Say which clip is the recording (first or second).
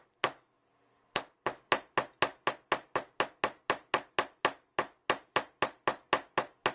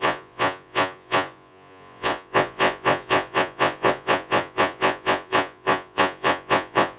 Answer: first